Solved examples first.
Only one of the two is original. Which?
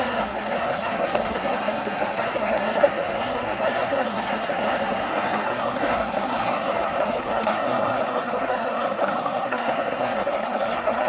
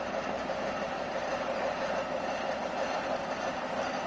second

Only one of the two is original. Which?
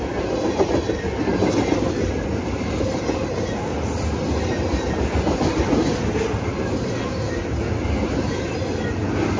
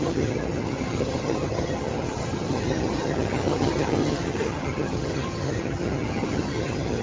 first